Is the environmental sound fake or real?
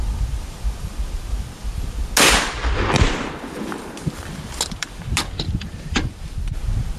real